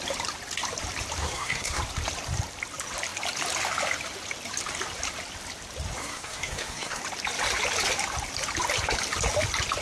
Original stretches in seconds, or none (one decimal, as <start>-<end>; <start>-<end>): 0.0-1.2; 1.8-6.0; 7.0-9.8